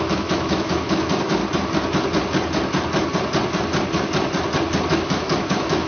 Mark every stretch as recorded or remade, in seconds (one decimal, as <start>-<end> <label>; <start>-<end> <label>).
0.0-1.4 remade; 1.4-4.9 recorded; 4.9-5.9 remade